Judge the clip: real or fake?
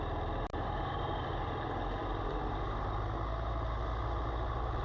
real